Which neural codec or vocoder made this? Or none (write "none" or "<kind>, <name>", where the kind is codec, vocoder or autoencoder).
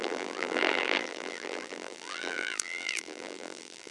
vocoder, BigVGAN v2